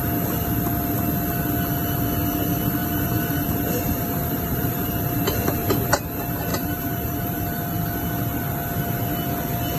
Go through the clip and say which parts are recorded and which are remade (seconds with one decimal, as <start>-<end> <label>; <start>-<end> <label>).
0.0-2.8 recorded; 2.8-5.2 remade; 5.2-6.5 recorded; 6.5-7.4 remade; 7.4-9.8 recorded